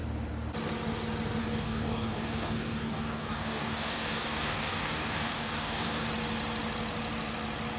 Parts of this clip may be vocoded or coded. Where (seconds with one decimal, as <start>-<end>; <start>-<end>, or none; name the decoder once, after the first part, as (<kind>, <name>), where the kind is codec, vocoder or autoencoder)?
1.4-6.1 (codec, DAC)